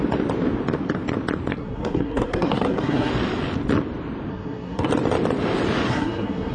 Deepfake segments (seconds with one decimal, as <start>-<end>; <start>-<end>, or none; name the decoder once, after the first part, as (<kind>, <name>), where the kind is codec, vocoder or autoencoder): 1.5-3.1 (codec, SNAC); 4.3-4.9; 5.9-6.5